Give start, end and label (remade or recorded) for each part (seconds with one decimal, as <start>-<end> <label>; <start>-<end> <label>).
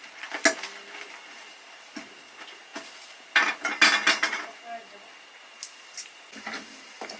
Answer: 0.0-7.2 recorded